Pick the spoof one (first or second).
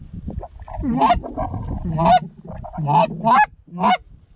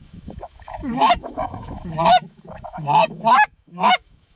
second